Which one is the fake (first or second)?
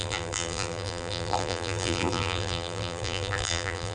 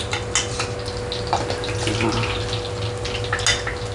first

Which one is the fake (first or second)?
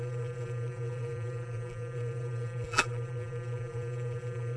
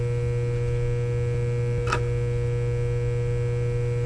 first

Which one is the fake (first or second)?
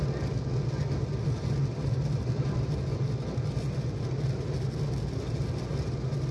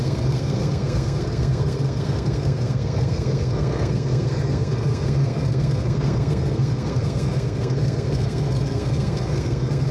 second